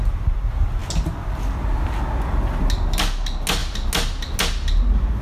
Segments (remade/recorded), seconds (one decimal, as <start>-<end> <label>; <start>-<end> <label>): 0.0-5.2 recorded